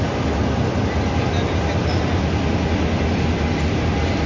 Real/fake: real